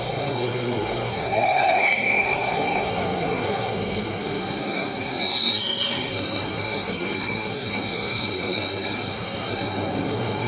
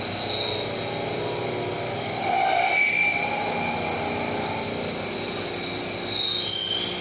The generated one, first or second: first